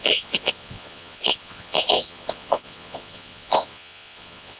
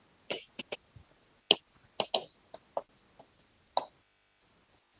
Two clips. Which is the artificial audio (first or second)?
first